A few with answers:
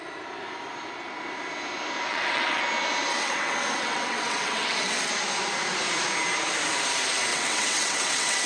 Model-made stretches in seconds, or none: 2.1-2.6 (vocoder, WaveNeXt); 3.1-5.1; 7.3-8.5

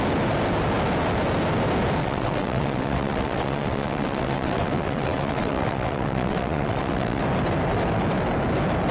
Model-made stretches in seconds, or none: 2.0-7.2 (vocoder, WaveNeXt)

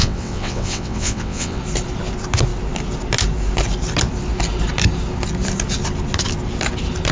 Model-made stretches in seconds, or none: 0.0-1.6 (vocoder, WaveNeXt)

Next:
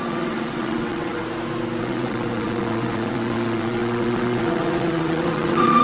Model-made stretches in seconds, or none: 0.0-1.2 (vocoder, WaveNeXt); 1.8-5.8

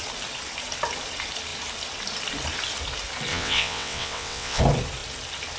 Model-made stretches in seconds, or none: 3.3-4.6 (vocoder, WaveNeXt)

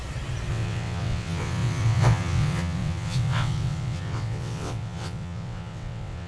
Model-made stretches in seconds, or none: 0.5-6.3 (vocoder, WaveNeXt)